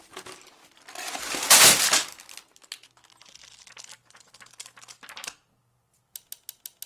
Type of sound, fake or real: real